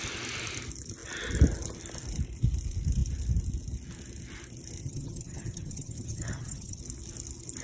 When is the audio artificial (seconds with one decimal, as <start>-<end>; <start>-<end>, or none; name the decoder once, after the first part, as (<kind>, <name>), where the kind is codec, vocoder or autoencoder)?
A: 4.8-6.8 (vocoder, HiFi-GAN)